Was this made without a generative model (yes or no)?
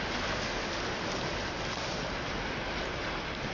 yes